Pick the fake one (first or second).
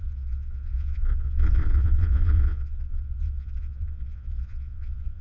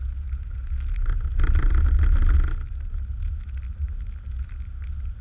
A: first